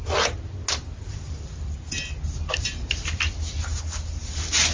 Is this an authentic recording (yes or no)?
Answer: yes